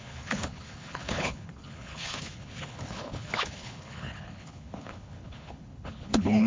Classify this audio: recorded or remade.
remade